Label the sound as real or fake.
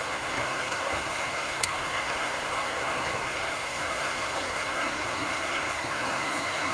fake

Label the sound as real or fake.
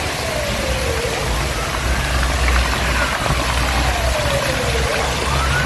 real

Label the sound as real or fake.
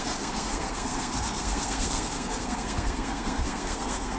fake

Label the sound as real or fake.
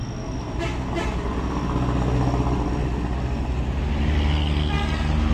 real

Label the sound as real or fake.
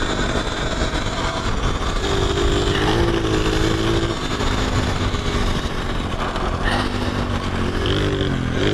real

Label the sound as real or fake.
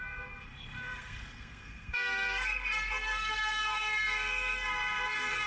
fake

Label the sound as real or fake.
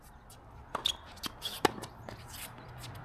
real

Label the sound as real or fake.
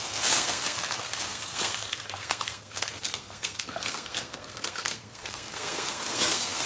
fake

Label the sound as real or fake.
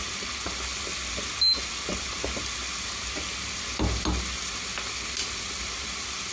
real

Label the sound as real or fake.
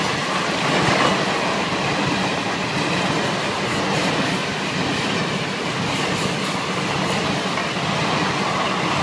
real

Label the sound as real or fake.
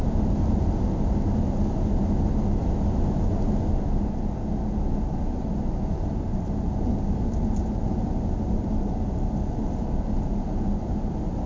real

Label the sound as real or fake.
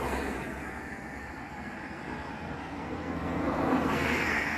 fake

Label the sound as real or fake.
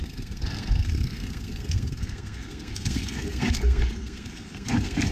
fake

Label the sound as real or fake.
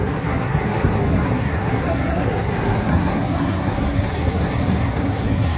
fake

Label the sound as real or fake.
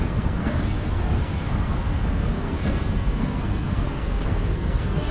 fake